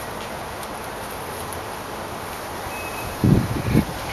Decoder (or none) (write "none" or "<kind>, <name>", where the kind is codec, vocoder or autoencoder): none